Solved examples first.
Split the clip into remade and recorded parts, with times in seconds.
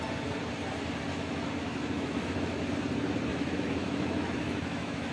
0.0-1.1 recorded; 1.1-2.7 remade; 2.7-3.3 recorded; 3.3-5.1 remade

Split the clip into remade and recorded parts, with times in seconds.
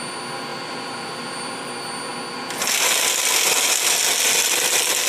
0.0-0.5 recorded; 0.5-1.7 remade; 1.7-5.1 recorded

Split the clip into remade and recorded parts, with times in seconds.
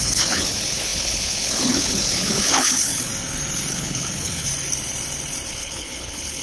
0.0-3.1 remade; 3.1-3.7 recorded; 3.7-4.5 remade; 4.5-5.5 recorded; 5.5-6.4 remade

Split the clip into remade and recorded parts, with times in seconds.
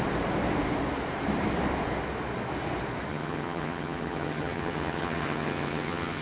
0.0-3.1 recorded; 3.1-6.2 remade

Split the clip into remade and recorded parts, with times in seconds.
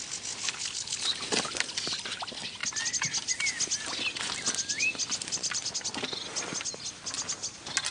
0.0-0.4 recorded; 0.4-1.1 remade; 1.1-7.9 recorded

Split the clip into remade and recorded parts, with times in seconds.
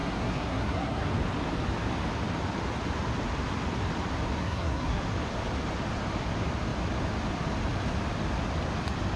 0.0-1.1 remade; 1.1-4.4 recorded; 4.4-5.0 remade; 5.0-9.2 recorded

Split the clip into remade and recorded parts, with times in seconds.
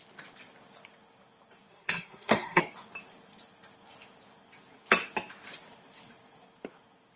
0.0-1.7 recorded; 1.7-2.6 remade; 2.6-7.2 recorded